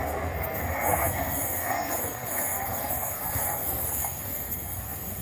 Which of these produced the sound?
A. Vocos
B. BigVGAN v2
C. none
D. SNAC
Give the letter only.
D